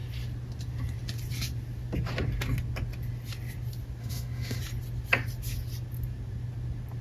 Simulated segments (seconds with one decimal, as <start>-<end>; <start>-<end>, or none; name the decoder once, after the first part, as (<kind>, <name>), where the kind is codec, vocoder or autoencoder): 4.0-4.6 (autoencoder, DAC-VAE)